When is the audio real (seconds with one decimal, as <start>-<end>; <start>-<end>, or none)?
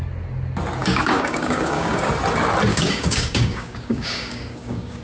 0.0-0.8; 2.1-2.7